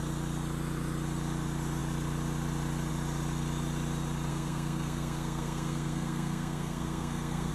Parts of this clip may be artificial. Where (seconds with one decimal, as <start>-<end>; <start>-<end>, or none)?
4.3-7.5